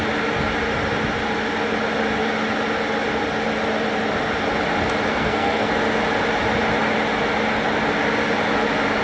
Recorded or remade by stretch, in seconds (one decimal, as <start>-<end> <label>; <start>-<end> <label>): 0.0-5.1 recorded; 5.1-5.7 remade; 5.7-9.0 recorded